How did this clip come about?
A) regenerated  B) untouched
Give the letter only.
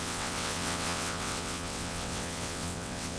A